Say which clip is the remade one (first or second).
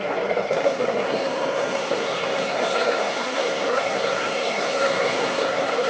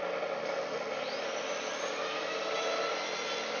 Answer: first